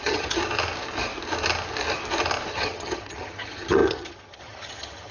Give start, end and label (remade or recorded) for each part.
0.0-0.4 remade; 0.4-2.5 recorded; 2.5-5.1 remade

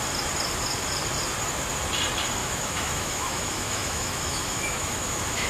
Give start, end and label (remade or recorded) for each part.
0.0-2.4 recorded; 2.4-5.5 remade